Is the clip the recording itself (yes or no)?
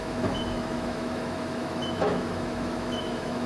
no